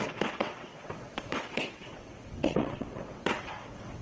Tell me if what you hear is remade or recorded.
remade